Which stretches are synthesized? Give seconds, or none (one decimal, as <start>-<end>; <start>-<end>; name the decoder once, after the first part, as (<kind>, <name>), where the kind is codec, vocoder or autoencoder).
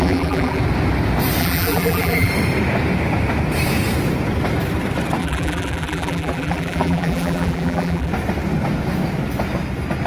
0.0-0.6 (vocoder, BigVGAN v2); 1.4-2.3; 5.2-8.1